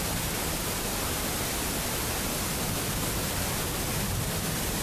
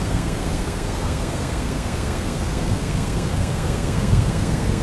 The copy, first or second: second